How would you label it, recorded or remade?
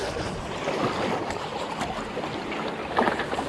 recorded